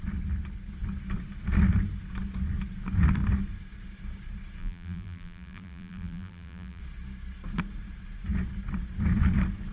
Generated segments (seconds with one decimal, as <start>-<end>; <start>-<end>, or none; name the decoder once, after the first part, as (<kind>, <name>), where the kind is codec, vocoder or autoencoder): 4.6-6.8 (vocoder, BigVGAN v2)